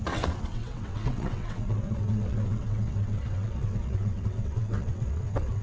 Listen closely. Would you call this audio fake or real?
fake